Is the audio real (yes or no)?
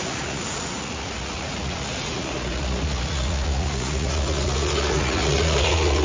no